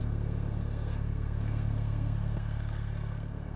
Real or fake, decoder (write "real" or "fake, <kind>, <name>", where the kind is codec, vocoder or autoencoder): fake, codec, SNAC